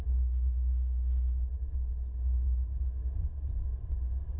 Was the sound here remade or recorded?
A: recorded